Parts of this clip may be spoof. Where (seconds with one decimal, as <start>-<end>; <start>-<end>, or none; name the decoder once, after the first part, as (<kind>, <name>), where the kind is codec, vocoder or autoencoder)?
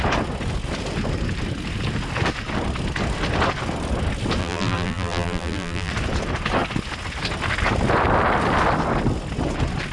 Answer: 4.4-5.9 (vocoder, BigVGAN v2)